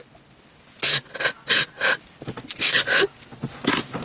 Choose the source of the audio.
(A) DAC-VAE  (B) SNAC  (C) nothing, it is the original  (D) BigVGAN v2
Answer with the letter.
C